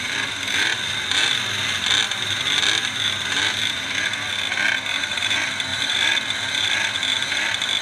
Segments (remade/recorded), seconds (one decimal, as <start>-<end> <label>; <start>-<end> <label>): 0.0-0.7 recorded; 0.7-1.4 remade; 1.4-3.6 recorded; 3.6-4.3 remade; 4.3-5.7 recorded; 5.7-6.5 remade; 6.5-7.8 recorded